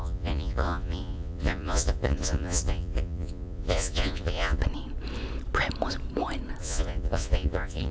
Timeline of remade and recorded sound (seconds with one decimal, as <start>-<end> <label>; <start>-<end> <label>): 0.0-4.6 remade; 4.6-6.6 recorded; 6.6-7.9 remade